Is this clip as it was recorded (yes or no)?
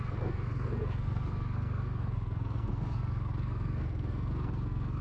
no